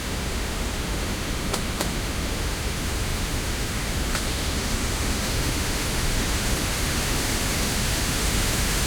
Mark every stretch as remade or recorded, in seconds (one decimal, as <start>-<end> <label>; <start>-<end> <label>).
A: 0.0-8.9 remade